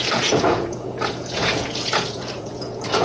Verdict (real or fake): fake